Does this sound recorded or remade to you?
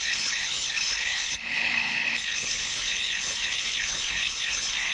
remade